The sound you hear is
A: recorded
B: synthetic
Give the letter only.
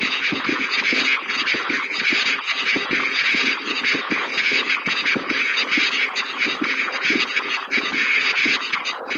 B